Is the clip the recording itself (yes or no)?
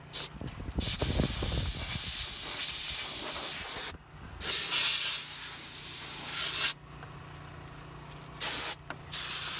yes